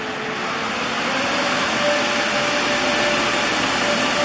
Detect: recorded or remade recorded